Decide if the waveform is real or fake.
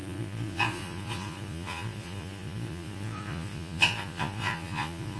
fake